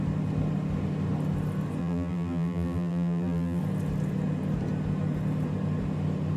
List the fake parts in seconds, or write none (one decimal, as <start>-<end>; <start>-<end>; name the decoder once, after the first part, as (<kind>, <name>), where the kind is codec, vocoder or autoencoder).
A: 1.8-3.6 (vocoder, BigVGAN v2)